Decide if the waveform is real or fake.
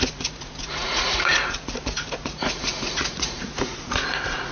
fake